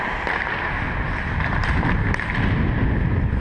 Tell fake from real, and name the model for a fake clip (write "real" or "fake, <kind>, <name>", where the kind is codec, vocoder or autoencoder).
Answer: real